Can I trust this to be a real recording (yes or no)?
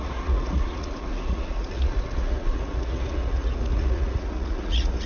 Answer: no